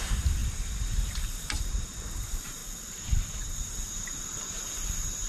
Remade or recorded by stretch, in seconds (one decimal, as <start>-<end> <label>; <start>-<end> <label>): 0.0-2.6 remade; 2.6-3.6 recorded; 3.6-5.3 remade